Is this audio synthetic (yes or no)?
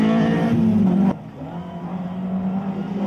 no